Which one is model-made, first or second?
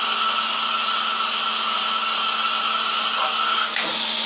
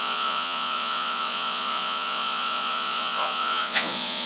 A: second